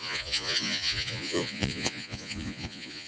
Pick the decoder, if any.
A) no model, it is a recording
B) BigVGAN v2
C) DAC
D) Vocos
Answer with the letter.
D